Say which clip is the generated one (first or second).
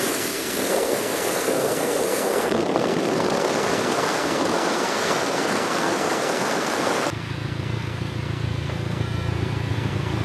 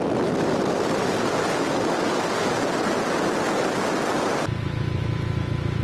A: first